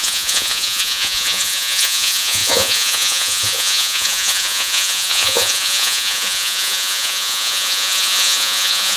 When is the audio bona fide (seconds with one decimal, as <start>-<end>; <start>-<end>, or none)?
none